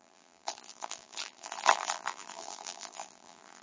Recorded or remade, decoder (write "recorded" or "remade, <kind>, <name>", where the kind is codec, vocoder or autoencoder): remade, vocoder, BigVGAN v2